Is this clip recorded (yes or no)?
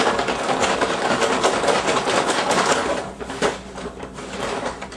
no